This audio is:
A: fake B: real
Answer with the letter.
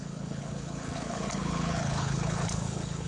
A